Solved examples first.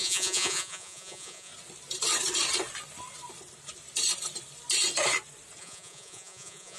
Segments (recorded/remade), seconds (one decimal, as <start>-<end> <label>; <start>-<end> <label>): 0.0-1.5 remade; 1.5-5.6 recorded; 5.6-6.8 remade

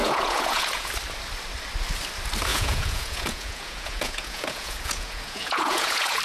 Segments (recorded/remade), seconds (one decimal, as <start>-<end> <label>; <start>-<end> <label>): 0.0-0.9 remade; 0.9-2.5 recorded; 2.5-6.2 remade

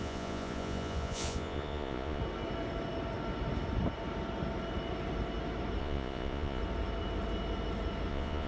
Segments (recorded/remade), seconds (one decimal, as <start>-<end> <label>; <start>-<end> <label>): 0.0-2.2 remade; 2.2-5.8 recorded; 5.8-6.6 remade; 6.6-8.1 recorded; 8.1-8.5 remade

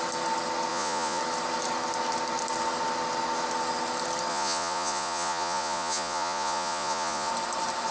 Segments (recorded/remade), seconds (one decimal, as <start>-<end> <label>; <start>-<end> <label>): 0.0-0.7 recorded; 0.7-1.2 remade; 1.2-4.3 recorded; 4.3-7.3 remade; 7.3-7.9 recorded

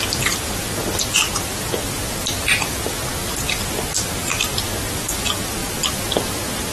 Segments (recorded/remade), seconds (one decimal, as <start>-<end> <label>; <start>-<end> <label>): 0.0-6.7 recorded

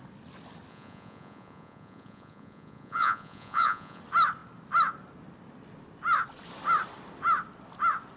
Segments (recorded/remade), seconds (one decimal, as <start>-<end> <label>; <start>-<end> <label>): 0.0-0.7 recorded; 0.7-4.0 remade; 4.0-8.2 recorded